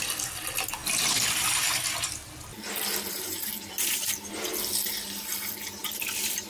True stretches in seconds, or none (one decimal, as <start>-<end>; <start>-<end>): 0.0-2.5; 3.5-6.5